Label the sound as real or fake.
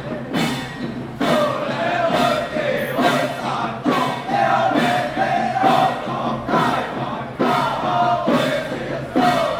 fake